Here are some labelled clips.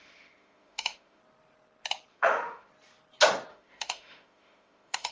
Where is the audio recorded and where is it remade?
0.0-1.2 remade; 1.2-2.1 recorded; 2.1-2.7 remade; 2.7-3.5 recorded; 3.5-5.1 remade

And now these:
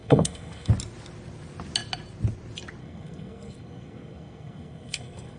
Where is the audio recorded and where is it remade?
0.0-0.7 remade; 0.7-2.8 recorded; 2.8-5.4 remade

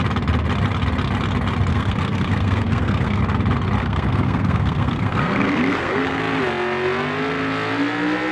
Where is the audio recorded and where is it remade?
0.0-1.7 recorded; 1.7-3.2 remade; 3.2-3.8 recorded; 3.8-6.2 remade; 6.2-8.3 recorded

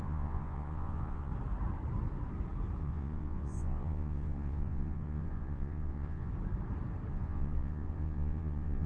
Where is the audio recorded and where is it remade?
0.0-1.3 remade; 1.3-2.8 recorded; 2.8-6.3 remade; 6.3-7.1 recorded; 7.1-8.9 remade

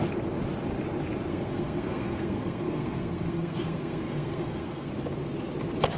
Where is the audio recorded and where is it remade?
0.0-1.3 recorded; 1.3-4.9 remade; 4.9-6.0 recorded

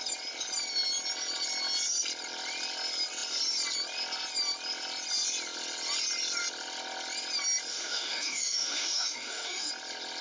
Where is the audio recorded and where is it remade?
0.0-7.7 recorded; 7.7-9.7 remade; 9.7-10.2 recorded

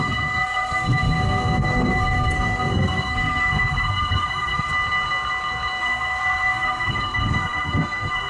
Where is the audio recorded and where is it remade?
0.0-4.7 remade; 4.7-5.8 recorded; 5.8-8.3 remade

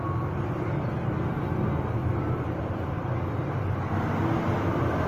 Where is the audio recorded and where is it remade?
0.0-2.0 recorded; 2.0-3.9 remade; 3.9-5.1 recorded